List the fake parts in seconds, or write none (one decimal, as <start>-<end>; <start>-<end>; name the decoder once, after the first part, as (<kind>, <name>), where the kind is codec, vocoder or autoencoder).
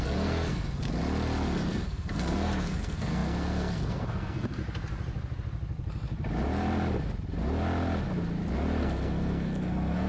0.0-0.9 (codec, SNAC); 1.7-4.6; 8.8-10.1